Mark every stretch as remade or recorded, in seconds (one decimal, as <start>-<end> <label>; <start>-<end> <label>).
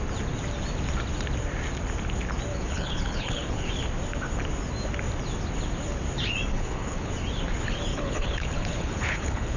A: 0.0-2.5 recorded; 2.5-3.7 remade; 3.7-6.5 recorded; 6.5-7.1 remade; 7.1-7.9 recorded; 7.9-9.6 remade